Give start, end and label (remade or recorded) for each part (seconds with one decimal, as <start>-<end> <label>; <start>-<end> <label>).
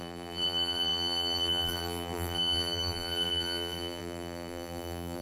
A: 0.0-5.2 remade